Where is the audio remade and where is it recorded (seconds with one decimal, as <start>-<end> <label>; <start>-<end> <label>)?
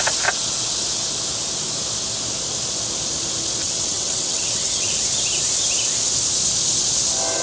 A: 0.0-3.6 recorded; 3.6-4.9 remade; 4.9-7.4 recorded